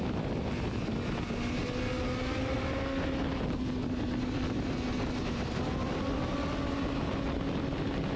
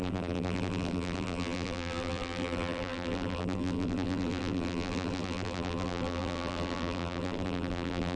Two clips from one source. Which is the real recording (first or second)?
first